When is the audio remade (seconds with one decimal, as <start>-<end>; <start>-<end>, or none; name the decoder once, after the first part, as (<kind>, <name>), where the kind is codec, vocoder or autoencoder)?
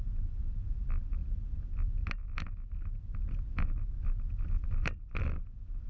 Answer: none